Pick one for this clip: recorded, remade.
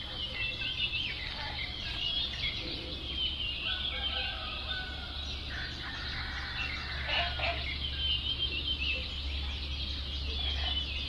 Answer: recorded